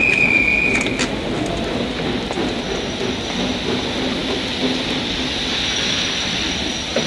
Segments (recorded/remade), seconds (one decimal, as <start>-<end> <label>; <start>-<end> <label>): 0.0-7.1 recorded